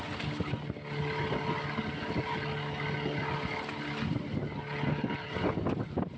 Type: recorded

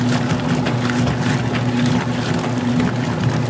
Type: recorded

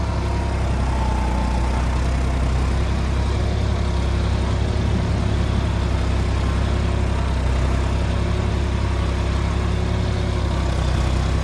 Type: recorded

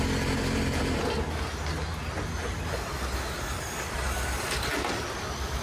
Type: recorded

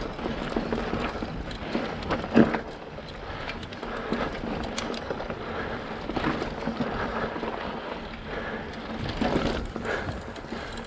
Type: recorded